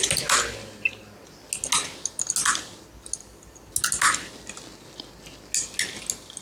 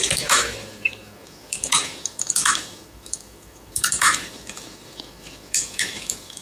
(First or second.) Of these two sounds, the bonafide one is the first